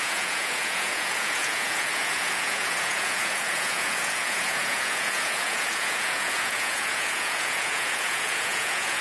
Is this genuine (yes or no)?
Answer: no